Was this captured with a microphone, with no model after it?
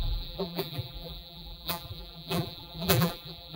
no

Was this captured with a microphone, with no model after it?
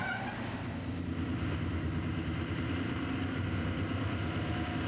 yes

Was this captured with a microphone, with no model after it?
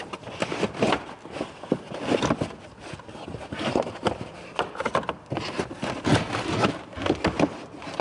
yes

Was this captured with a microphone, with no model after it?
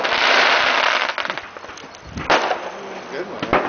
yes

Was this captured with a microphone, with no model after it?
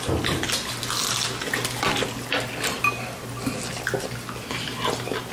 yes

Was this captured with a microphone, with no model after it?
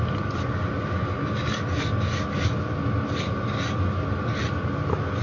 yes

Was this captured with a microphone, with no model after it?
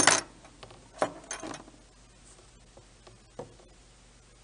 yes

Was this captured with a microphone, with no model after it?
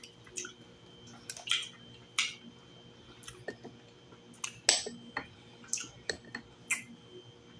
yes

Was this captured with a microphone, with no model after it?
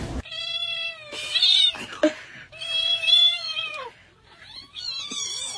no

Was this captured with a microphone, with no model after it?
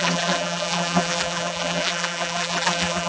no